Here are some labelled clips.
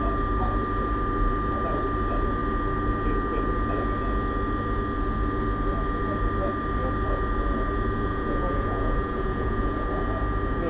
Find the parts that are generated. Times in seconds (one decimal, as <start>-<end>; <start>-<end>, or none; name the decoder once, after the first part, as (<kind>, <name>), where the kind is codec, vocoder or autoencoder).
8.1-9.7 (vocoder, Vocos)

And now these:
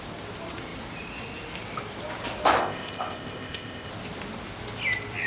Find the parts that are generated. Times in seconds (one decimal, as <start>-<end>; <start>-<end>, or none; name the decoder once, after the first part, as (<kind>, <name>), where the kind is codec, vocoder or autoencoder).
2.6-3.9 (codec, ZipCodec)

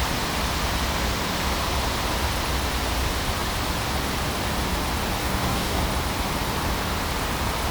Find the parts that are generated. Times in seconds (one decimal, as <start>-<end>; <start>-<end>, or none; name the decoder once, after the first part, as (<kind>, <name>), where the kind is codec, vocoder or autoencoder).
5.2-5.8 (codec, DAC)

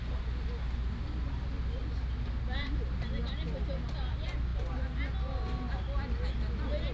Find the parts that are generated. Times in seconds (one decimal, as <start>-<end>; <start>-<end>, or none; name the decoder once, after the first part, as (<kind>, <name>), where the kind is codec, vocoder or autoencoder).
none

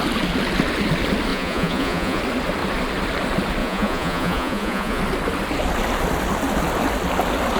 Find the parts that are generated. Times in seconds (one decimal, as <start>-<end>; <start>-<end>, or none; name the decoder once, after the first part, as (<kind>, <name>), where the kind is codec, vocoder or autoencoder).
1.3-2.2 (vocoder, Vocos); 3.6-5.0

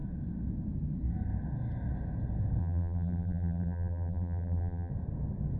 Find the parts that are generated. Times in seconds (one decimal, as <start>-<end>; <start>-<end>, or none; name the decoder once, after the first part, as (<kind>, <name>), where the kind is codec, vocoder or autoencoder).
2.6-4.9 (vocoder, BigVGAN v2)

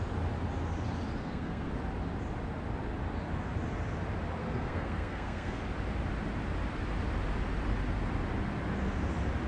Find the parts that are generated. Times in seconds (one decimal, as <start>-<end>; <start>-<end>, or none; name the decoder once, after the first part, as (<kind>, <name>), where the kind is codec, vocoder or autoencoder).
1.2-1.7 (codec, SNAC); 4.4-5.6